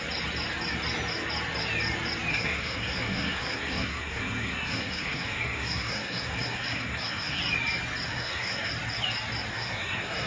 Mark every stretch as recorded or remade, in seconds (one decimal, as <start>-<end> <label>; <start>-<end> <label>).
0.0-2.3 recorded; 2.3-7.4 remade; 7.4-8.1 recorded; 8.1-8.7 remade; 8.7-9.5 recorded; 9.5-10.3 remade